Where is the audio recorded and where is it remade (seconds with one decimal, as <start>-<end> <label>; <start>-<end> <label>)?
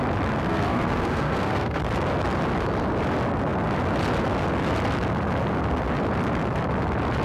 0.0-0.4 recorded; 0.4-1.8 remade; 1.8-7.2 recorded